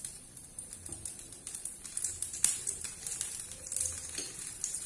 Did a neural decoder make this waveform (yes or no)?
yes